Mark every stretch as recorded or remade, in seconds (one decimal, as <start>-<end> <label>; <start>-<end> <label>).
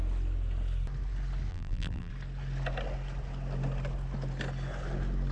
0.0-1.5 recorded; 1.5-2.1 remade; 2.1-5.3 recorded